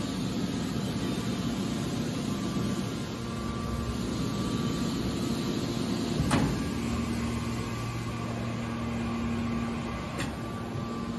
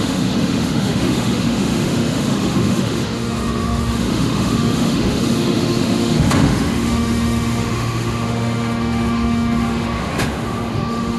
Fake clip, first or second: second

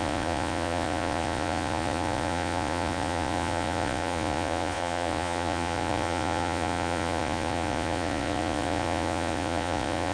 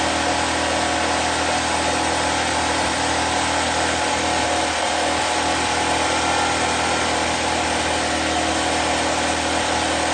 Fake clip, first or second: first